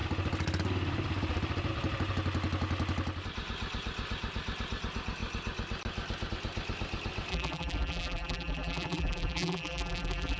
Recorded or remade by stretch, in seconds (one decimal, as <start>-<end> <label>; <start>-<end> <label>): 0.0-7.3 recorded; 7.3-10.4 remade